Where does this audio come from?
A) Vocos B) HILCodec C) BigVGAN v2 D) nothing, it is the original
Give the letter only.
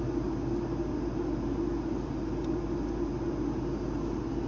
D